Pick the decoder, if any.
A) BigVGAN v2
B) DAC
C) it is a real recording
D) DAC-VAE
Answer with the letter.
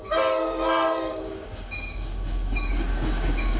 B